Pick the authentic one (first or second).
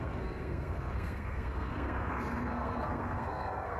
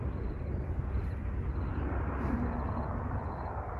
second